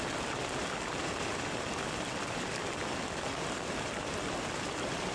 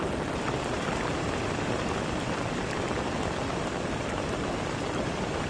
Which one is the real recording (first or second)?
first